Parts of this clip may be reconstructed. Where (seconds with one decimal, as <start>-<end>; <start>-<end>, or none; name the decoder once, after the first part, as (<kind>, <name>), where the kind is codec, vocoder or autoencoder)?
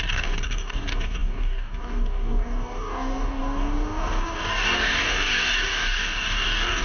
0.0-6.8 (codec, DAC)